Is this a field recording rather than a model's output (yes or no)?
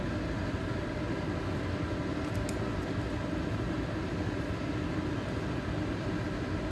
yes